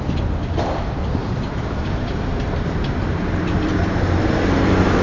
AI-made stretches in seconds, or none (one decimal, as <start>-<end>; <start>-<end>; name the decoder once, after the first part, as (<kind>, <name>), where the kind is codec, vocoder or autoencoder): 1.2-4.2 (vocoder, BigVGAN v2)